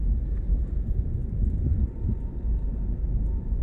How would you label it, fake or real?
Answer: fake